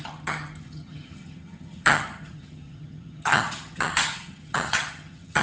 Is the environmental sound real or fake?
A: fake